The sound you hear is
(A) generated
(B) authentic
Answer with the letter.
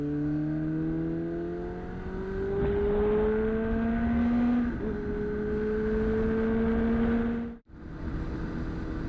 B